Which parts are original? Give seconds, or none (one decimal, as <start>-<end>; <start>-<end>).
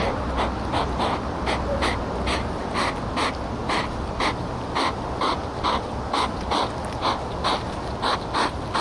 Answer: 0.0-8.8